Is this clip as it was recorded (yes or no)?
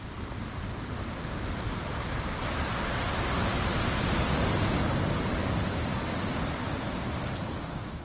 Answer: yes